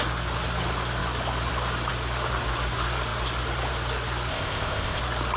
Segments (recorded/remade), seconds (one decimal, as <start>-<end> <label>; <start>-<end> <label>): 0.0-4.3 recorded; 4.3-5.0 remade; 5.0-5.4 recorded